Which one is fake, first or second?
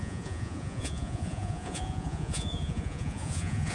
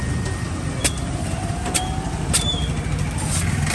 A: first